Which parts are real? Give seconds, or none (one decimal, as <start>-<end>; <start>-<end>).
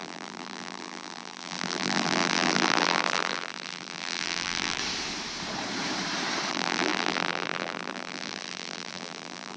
4.8-6.5